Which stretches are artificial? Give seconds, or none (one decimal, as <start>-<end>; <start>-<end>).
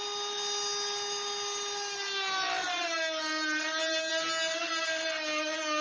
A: none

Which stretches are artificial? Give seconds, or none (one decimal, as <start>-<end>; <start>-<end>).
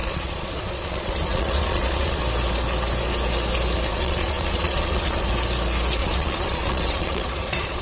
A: 0.0-2.2; 3.9-5.3; 6.0-7.8